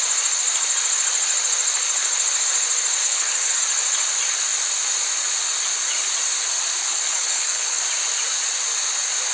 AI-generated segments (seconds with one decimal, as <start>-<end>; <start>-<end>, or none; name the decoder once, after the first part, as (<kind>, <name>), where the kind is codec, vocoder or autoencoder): 3.0-3.6 (codec, HILCodec); 6.8-7.8